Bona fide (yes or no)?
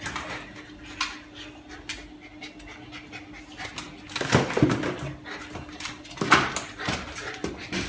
yes